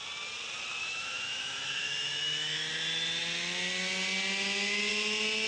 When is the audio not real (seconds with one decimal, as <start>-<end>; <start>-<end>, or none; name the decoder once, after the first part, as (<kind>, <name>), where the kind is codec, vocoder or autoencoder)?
0.8-2.7 (autoencoder, DAC-VAE)